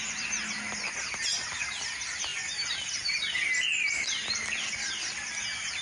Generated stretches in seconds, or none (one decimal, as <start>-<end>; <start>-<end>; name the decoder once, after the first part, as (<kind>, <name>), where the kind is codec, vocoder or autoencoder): none